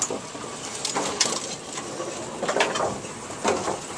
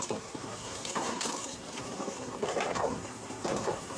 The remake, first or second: second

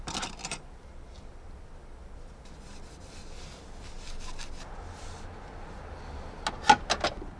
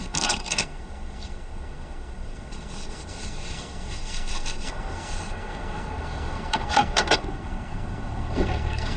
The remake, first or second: second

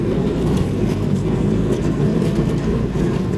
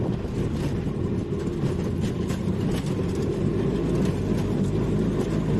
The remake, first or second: first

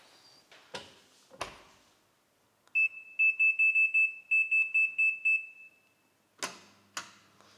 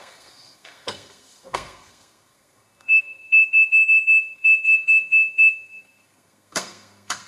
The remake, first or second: second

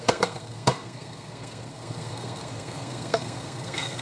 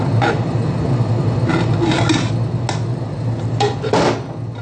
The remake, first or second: first